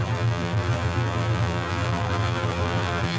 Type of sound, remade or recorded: remade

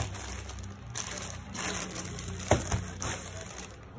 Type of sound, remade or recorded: recorded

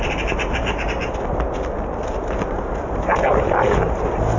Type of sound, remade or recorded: recorded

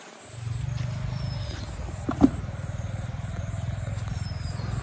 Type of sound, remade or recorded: recorded